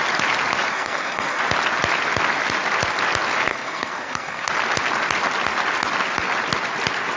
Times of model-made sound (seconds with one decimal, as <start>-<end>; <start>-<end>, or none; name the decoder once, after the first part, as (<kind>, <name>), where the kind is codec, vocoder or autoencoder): 0.7-1.4 (codec, SNAC); 3.5-4.5